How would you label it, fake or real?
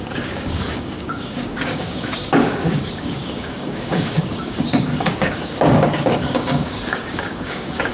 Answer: fake